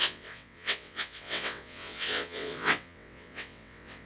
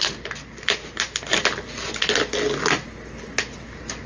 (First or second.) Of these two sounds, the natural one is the second